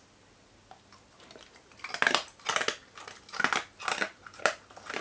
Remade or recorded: recorded